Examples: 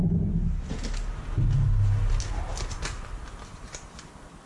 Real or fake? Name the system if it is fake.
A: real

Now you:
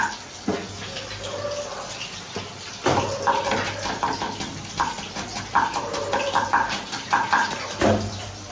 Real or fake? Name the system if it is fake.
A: real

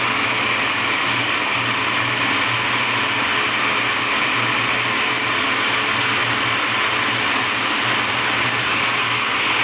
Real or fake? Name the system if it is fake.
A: real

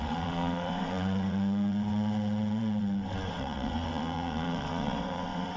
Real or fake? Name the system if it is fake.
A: fake, vocoder, WaveNeXt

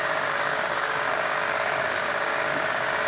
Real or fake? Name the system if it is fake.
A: fake, codec, DAC